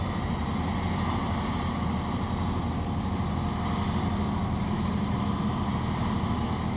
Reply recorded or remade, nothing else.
recorded